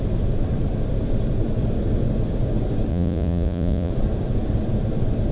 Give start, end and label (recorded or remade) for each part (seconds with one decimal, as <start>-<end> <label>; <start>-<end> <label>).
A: 0.0-2.9 recorded; 2.9-3.9 remade; 3.9-5.3 recorded

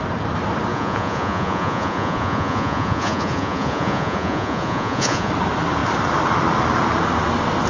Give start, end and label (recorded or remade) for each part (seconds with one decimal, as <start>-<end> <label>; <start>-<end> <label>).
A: 0.0-0.7 recorded; 0.7-5.3 remade; 5.3-7.7 recorded

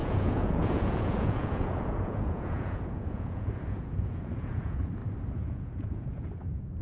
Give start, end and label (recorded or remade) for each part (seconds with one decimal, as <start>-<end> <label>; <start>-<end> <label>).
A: 0.0-5.0 remade; 5.0-5.5 recorded; 5.5-6.8 remade

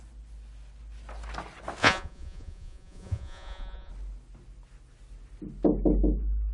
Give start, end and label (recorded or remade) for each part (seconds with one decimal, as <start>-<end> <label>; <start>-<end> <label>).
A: 0.0-1.8 recorded; 1.8-3.9 remade; 3.9-6.5 recorded

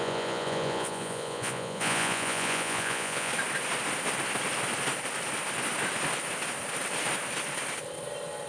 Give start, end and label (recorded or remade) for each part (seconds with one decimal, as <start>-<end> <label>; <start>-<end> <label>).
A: 0.0-3.3 remade; 3.3-8.5 recorded

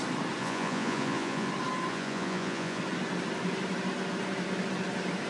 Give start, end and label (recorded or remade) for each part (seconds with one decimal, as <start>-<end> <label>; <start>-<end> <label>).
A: 0.0-0.4 recorded; 0.4-1.5 remade; 1.5-1.9 recorded; 1.9-2.8 remade; 2.8-5.3 recorded

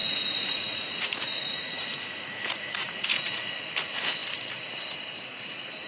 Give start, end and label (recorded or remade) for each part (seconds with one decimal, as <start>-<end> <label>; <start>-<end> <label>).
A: 0.0-3.5 remade; 3.5-5.9 recorded